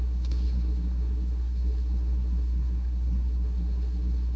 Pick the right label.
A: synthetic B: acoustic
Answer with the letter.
A